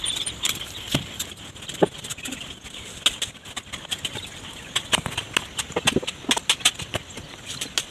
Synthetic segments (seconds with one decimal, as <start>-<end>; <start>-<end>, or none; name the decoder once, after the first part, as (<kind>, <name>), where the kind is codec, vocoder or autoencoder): none